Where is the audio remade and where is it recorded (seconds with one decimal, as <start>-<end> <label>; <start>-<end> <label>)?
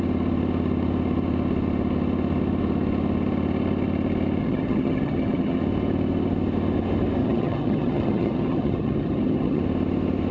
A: 0.0-4.4 recorded; 4.4-5.6 remade; 5.6-7.2 recorded; 7.2-9.6 remade; 9.6-10.3 recorded